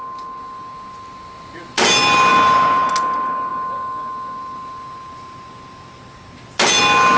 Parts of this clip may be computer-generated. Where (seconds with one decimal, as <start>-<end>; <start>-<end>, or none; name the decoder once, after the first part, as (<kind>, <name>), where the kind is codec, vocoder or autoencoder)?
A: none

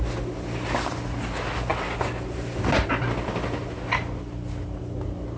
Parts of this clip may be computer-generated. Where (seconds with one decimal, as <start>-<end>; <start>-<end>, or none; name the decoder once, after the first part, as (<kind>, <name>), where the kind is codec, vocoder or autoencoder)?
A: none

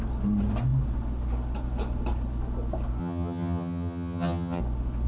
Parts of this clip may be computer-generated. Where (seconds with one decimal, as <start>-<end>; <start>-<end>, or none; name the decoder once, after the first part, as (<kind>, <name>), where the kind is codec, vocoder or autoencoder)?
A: 3.0-4.6 (vocoder, HiFi-GAN)

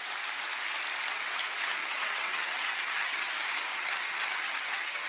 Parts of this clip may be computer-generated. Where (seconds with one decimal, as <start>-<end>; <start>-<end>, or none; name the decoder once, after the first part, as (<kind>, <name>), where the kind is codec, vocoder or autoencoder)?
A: 1.8-3.3 (vocoder, HiFi-GAN); 3.7-5.1

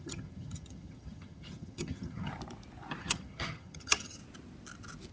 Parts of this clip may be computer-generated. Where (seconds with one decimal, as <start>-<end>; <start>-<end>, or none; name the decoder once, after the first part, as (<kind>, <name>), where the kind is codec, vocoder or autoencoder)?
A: 0.0-2.3 (vocoder, HiFi-GAN); 3.0-4.2

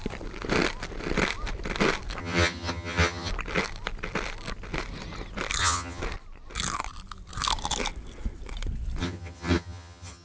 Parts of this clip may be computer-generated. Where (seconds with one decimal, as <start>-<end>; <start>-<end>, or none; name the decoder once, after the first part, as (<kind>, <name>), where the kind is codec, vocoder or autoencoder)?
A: 2.2-3.3 (vocoder, HiFi-GAN); 5.6-6.0; 9.0-10.2

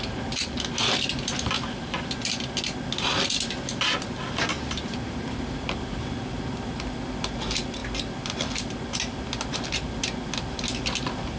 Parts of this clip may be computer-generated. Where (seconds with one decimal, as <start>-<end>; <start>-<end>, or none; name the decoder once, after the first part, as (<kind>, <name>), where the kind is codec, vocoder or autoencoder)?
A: none